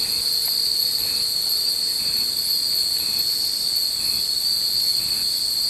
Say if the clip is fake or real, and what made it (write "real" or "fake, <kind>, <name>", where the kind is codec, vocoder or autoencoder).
real